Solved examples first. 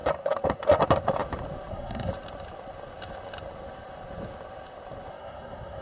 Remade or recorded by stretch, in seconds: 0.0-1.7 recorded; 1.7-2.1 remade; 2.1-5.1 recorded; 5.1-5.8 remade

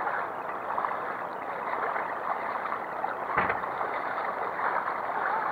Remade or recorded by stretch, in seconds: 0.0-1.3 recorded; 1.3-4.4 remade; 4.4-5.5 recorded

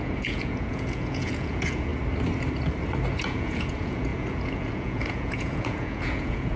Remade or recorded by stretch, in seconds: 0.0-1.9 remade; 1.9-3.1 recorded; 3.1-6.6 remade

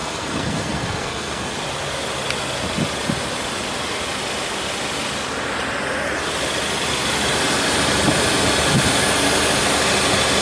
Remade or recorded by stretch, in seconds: 0.0-1.5 remade; 1.5-10.4 recorded

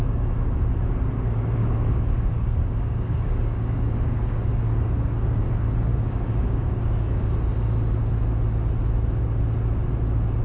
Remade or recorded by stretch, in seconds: 0.0-1.6 recorded; 1.6-5.4 remade; 5.4-5.9 recorded; 5.9-7.3 remade; 7.3-10.4 recorded

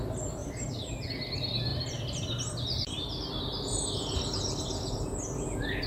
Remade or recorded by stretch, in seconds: 0.0-0.4 recorded; 0.4-0.9 remade; 0.9-1.7 recorded; 1.7-3.3 remade; 3.3-5.9 recorded

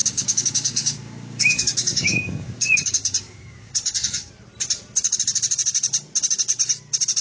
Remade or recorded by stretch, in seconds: 0.0-4.3 remade; 4.3-7.2 recorded